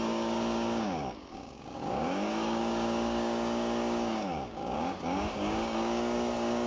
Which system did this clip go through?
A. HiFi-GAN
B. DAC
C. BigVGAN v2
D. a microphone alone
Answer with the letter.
B